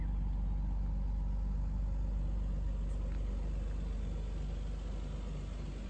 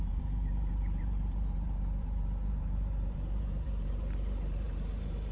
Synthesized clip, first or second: second